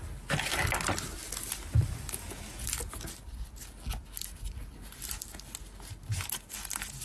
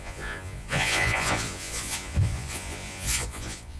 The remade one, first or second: second